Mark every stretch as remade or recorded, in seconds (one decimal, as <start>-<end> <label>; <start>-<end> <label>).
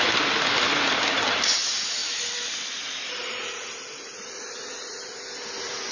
0.0-5.9 recorded